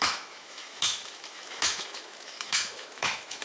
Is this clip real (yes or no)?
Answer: no